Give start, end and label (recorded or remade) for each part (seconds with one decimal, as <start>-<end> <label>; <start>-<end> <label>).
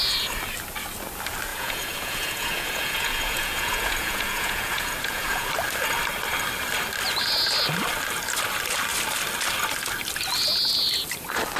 0.0-1.5 recorded; 1.5-5.5 remade; 5.5-11.6 recorded